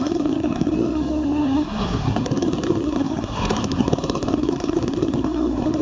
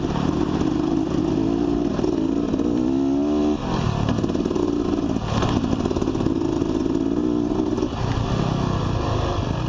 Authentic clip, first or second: second